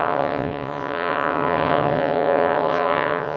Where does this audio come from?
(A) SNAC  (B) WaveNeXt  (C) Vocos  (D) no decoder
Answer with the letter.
B